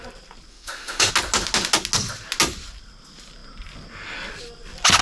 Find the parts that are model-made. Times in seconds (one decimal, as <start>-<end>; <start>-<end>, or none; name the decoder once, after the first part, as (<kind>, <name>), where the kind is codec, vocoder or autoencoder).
0.5-1.1 (autoencoder, DAC-VAE)

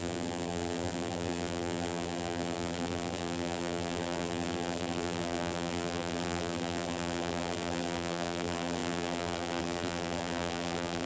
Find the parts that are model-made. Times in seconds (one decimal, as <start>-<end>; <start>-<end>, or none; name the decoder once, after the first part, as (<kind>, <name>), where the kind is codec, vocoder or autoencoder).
0.0-11.1 (vocoder, BigVGAN v2)

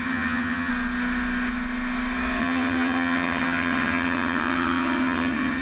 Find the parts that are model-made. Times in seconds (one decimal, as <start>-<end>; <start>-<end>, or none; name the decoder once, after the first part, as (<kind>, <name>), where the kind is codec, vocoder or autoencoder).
0.0-0.7 (vocoder, HiFi-GAN); 2.4-5.6

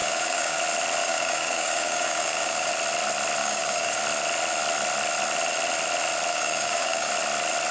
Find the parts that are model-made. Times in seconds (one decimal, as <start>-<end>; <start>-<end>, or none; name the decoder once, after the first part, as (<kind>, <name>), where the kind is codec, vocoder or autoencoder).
0.0-0.6 (codec, DAC); 1.0-2.7; 3.4-4.0; 6.3-7.1